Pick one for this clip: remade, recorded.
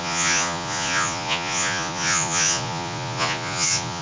remade